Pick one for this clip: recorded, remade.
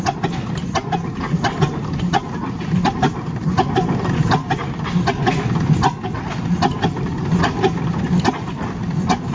recorded